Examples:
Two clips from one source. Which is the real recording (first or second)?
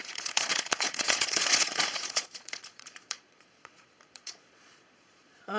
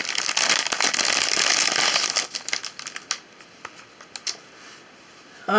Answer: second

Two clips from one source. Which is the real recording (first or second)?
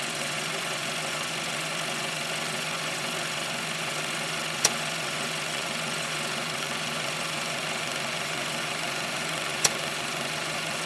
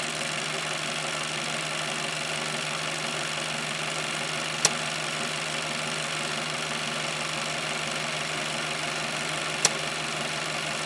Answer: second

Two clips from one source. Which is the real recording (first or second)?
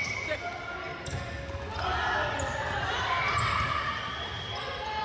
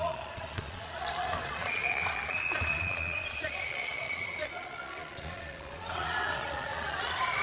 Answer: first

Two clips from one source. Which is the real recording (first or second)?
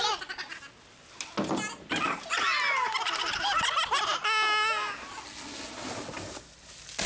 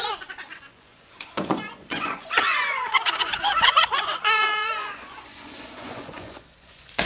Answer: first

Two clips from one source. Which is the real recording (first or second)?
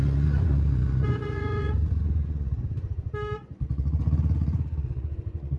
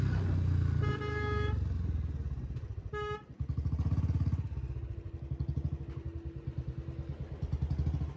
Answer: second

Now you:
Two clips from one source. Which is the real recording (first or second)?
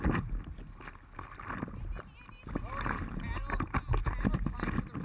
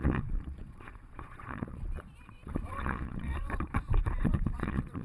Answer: first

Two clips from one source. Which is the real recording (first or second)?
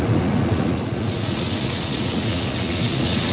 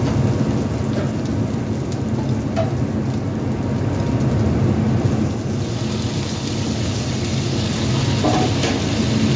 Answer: second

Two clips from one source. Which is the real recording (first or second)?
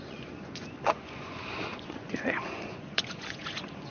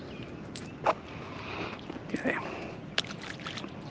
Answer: second